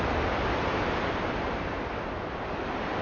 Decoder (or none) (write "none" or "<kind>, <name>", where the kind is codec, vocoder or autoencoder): none